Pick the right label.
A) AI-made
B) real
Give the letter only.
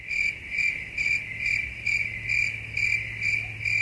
B